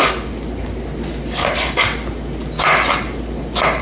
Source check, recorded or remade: recorded